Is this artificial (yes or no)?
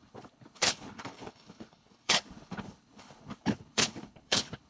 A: yes